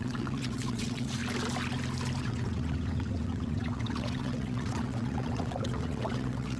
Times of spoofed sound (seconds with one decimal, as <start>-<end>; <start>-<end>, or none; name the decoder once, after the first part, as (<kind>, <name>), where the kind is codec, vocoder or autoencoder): 0.0-1.2 (vocoder, WaveNeXt); 2.2-6.6